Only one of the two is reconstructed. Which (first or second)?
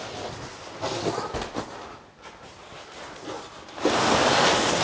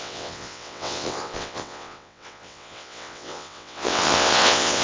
second